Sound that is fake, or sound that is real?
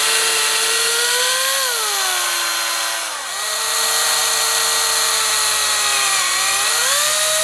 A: real